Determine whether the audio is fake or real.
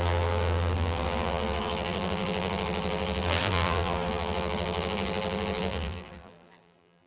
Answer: fake